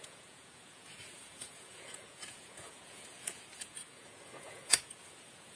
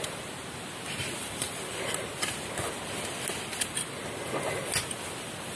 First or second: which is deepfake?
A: first